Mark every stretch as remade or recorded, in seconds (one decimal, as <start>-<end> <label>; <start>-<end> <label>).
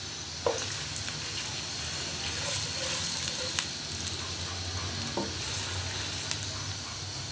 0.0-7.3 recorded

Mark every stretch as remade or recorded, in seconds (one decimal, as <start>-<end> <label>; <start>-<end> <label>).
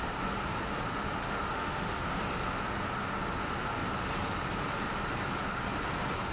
0.0-1.2 recorded; 1.2-2.2 remade; 2.2-6.3 recorded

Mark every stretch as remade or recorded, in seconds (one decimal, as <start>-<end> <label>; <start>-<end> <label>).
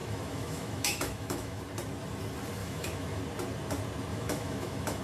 0.0-1.6 remade; 1.6-2.6 recorded; 2.6-3.2 remade; 3.2-4.1 recorded; 4.1-5.0 remade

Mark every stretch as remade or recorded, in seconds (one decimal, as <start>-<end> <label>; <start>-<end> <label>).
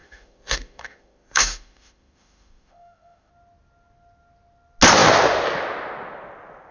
0.0-3.3 remade; 3.3-6.7 recorded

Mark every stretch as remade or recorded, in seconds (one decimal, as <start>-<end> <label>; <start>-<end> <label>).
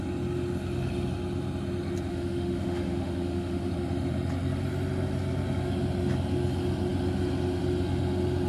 0.0-2.1 recorded; 2.1-3.7 remade; 3.7-8.5 recorded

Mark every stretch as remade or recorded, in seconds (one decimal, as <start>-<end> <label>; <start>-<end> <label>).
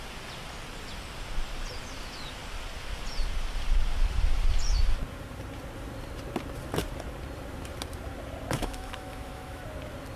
0.0-8.6 recorded; 8.6-9.6 remade; 9.6-10.2 recorded